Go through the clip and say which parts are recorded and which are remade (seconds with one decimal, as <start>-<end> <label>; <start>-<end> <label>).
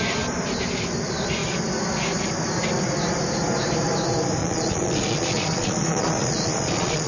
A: 0.0-4.4 recorded; 4.4-7.1 remade